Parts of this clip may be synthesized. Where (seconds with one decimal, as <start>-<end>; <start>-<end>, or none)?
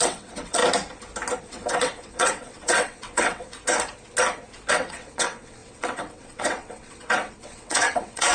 0.0-0.6; 1.4-3.6; 4.7-8.3